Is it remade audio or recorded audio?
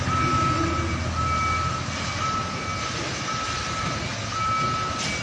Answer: recorded